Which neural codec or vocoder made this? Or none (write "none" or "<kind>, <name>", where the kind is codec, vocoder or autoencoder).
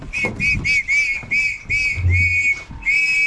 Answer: none